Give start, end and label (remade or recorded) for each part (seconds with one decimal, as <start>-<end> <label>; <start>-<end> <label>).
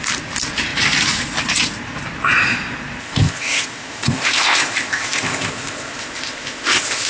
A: 0.0-3.0 recorded; 3.0-7.1 remade